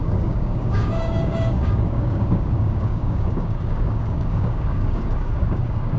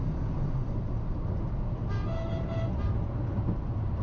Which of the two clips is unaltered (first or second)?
second